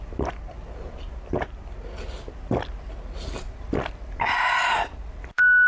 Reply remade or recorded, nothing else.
recorded